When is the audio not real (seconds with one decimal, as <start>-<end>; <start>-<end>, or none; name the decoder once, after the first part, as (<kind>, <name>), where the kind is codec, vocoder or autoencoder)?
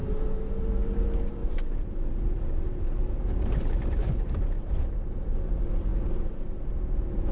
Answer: 1.4-5.5 (vocoder, BigVGAN v2)